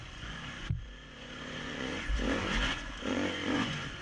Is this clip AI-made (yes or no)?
yes